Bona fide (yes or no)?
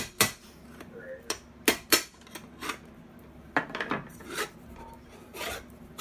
yes